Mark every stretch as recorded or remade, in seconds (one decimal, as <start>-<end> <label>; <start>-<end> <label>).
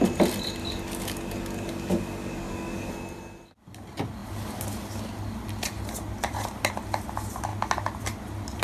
0.0-0.6 recorded; 0.6-2.9 remade; 2.9-8.6 recorded